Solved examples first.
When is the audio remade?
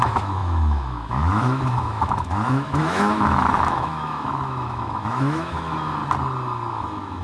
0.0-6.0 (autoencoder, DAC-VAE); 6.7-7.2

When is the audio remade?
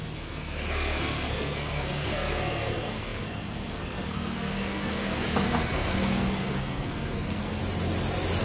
0.0-7.6 (codec, SNAC)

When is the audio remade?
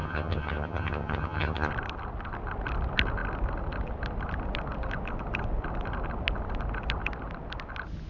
0.0-1.7 (vocoder, HiFi-GAN)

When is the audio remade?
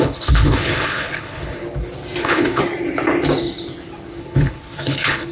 0.0-1.6 (codec, HILCodec); 2.2-2.6; 4.2-5.3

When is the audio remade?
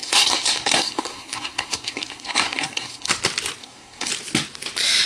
0.0-3.1 (codec, SNAC); 3.6-4.1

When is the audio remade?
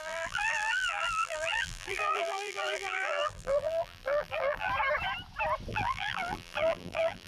0.0-4.7 (vocoder, BigVGAN v2); 5.7-7.3